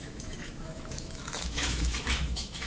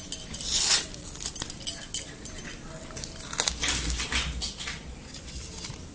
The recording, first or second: second